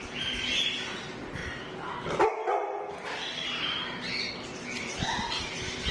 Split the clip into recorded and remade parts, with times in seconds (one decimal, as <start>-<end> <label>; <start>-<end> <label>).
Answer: 0.0-5.9 recorded